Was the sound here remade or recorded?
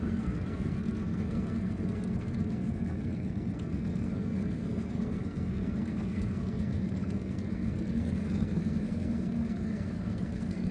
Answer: remade